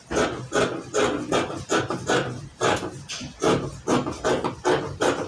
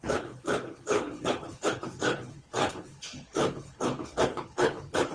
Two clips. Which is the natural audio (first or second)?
first